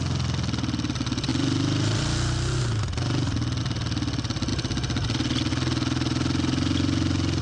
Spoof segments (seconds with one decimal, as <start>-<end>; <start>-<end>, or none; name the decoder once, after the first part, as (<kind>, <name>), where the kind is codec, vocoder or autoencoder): none